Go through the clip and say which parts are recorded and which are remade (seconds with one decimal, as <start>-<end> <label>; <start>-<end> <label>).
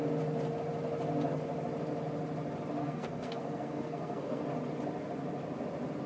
0.0-2.8 recorded; 2.8-4.4 remade; 4.4-6.1 recorded